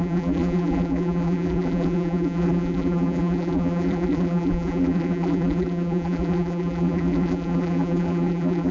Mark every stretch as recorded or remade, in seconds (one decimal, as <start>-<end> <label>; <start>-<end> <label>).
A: 0.0-8.7 remade